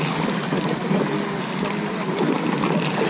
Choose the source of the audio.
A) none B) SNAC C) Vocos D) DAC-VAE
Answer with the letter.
A